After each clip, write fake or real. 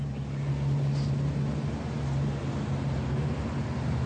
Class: real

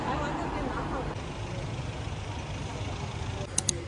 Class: real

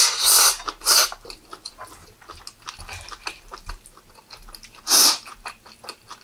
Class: real